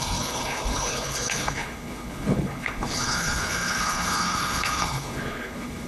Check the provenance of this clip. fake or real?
fake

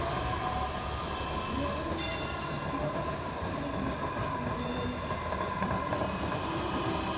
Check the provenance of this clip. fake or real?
real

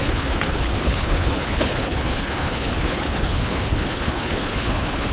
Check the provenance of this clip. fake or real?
fake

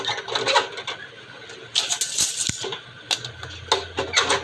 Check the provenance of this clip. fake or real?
real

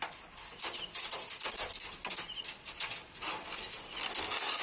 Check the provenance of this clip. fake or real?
real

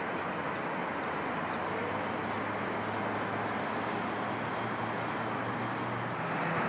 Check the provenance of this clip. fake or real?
real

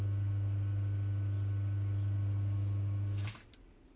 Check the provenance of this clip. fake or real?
real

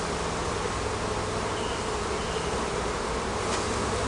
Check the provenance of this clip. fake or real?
real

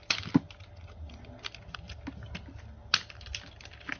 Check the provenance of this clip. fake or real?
real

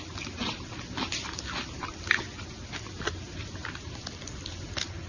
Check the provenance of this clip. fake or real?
real